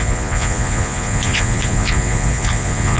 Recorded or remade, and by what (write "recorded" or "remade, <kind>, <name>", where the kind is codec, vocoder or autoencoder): remade, vocoder, Vocos